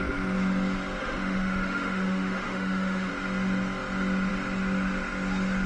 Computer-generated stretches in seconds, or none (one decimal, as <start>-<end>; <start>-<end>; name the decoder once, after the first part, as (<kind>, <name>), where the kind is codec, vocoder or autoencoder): 1.0-3.1 (autoencoder, DAC-VAE)